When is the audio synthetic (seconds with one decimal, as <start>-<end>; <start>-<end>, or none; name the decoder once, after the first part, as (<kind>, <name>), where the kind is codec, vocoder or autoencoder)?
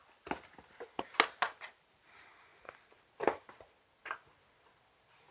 none